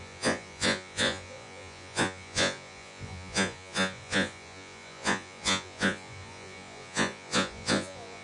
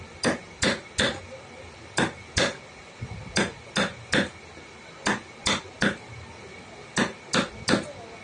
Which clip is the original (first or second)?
second